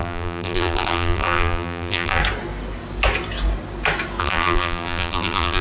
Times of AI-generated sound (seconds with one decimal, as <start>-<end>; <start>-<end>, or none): 0.0-2.2; 4.2-5.6